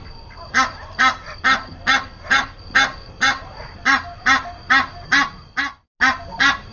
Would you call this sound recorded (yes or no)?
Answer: yes